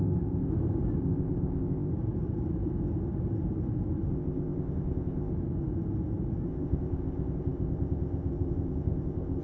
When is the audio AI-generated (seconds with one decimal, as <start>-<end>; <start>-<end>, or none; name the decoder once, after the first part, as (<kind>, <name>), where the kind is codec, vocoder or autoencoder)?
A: 0.0-0.5 (codec, ZipCodec); 1.0-1.9; 4.1-5.3; 6.5-9.4